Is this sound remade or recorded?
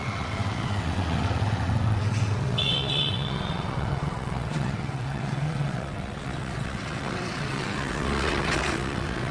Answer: remade